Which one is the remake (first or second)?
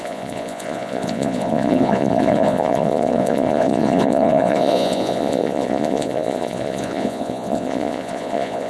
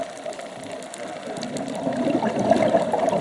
first